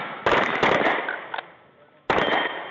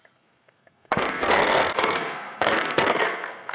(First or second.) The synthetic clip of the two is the second